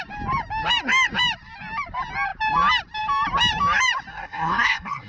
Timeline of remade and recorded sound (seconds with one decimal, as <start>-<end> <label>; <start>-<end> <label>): 0.0-4.1 recorded; 4.1-5.1 remade